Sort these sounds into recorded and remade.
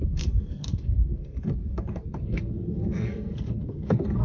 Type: remade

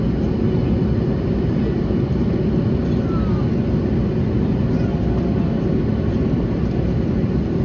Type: recorded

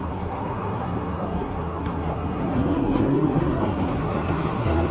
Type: remade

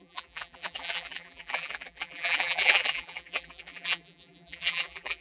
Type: remade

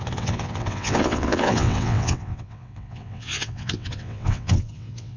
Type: remade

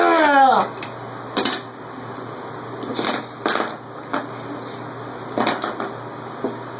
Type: recorded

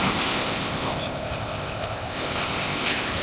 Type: remade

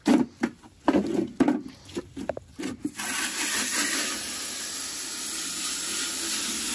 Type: recorded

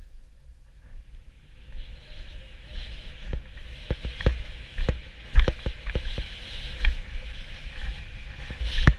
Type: remade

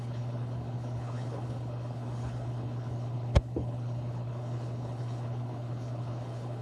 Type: remade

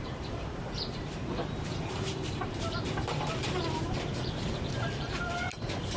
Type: remade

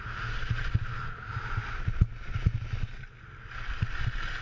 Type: recorded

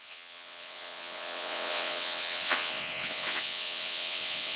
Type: remade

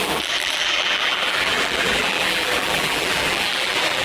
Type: remade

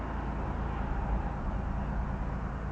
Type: recorded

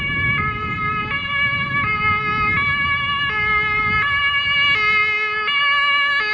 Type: recorded